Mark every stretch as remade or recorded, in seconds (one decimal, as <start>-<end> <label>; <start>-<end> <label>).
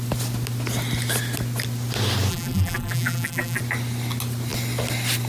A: 0.0-2.3 recorded; 2.3-3.6 remade; 3.6-5.3 recorded